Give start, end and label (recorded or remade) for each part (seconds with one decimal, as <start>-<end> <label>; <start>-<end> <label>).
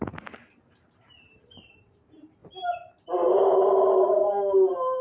0.0-2.4 remade; 2.4-3.0 recorded; 3.0-5.0 remade